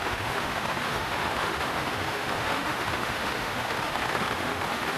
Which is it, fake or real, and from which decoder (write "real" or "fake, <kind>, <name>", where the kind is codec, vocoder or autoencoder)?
fake, autoencoder, DAC-VAE